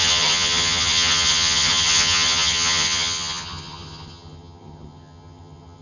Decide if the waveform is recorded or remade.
remade